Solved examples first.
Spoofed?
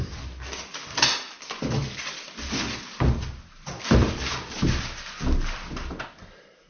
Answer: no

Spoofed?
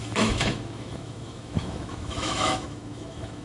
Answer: yes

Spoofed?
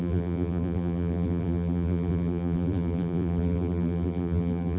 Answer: yes